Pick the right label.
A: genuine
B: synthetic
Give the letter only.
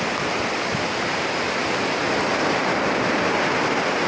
A